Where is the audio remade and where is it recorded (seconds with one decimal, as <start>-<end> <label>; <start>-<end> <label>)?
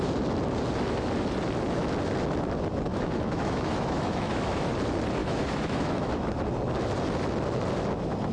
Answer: 0.0-2.9 recorded; 2.9-4.7 remade; 4.7-5.2 recorded; 5.2-6.2 remade; 6.2-8.3 recorded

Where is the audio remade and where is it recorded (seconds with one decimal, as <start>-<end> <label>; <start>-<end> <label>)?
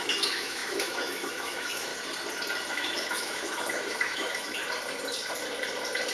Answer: 0.0-1.9 remade; 1.9-2.7 recorded; 2.7-4.6 remade; 4.6-6.1 recorded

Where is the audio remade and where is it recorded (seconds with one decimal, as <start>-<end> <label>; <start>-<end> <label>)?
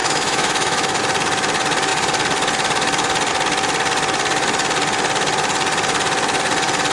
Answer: 0.0-1.0 remade; 1.0-6.9 recorded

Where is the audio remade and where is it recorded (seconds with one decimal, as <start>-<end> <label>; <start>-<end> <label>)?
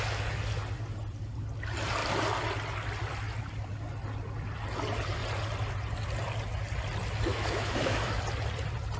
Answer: 0.0-7.3 recorded; 7.3-8.2 remade; 8.2-9.0 recorded